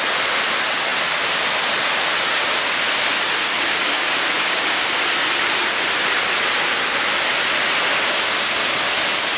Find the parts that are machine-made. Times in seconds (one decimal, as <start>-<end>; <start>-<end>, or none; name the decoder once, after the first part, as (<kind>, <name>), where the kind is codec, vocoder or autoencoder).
3.8-4.8 (codec, DAC)